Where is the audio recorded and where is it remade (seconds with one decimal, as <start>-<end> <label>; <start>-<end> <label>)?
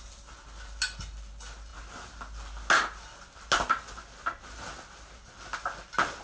0.0-6.2 recorded